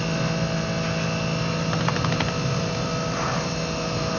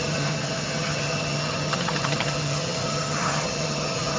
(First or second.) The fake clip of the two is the second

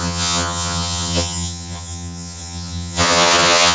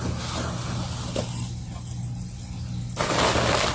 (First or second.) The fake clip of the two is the first